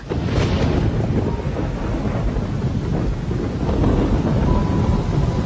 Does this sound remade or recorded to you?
recorded